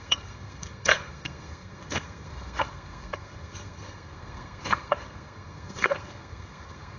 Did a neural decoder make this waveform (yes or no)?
yes